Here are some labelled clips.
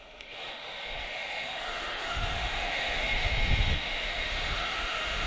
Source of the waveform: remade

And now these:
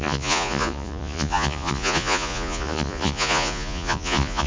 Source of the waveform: remade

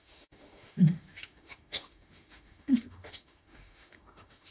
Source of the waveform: remade